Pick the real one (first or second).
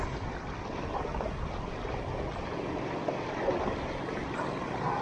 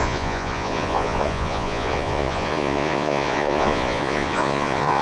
first